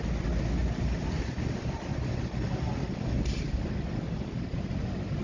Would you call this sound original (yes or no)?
yes